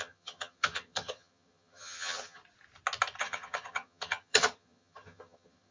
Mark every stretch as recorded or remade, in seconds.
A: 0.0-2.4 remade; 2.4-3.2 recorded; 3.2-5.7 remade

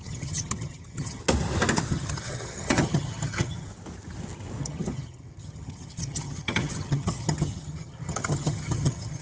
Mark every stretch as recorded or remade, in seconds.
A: 0.0-1.2 remade; 1.2-1.9 recorded; 1.9-3.7 remade; 3.7-4.6 recorded; 4.6-9.2 remade